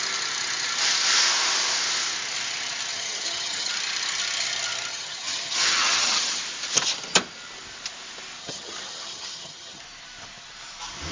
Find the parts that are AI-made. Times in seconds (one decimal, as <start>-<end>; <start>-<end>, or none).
2.9-3.7; 4.9-6.4; 8.4-9.8